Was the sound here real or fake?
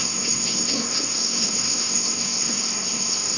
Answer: fake